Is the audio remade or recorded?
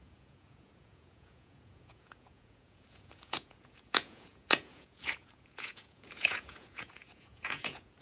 remade